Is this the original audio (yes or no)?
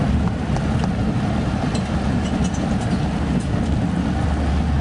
yes